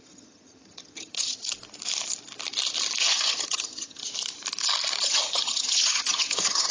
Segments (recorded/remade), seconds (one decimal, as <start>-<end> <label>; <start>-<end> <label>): 0.0-1.4 remade; 1.4-3.0 recorded; 3.0-4.0 remade; 4.0-5.0 recorded; 5.0-6.7 remade